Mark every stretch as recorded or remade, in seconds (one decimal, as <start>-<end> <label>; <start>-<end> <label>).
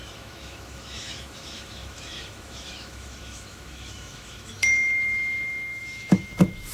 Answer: 0.0-6.7 remade